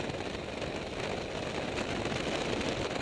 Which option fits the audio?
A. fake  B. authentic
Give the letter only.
B